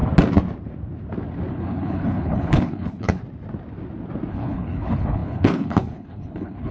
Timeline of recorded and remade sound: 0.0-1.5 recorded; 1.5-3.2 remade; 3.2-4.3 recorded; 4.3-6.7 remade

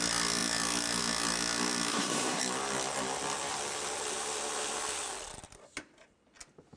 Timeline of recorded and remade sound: 0.0-1.9 recorded; 1.9-2.4 remade; 2.4-6.8 recorded

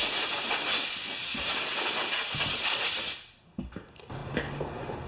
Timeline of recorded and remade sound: 0.0-1.2 recorded; 1.2-3.8 remade; 3.8-4.2 recorded; 4.2-5.1 remade

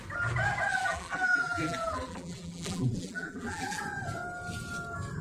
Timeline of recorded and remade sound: 0.0-0.7 recorded; 0.7-3.8 remade; 3.8-5.2 recorded

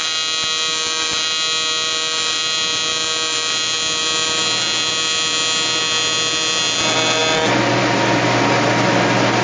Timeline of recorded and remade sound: 0.0-9.4 recorded

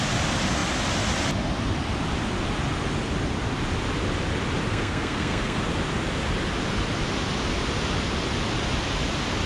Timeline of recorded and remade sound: 0.0-4.7 recorded; 4.7-5.6 remade; 5.6-9.5 recorded